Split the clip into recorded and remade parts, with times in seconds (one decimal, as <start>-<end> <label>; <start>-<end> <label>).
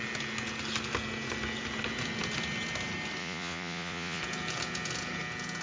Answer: 0.0-3.2 recorded; 3.2-4.2 remade; 4.2-5.6 recorded